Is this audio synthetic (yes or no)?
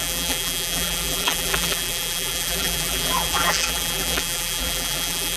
yes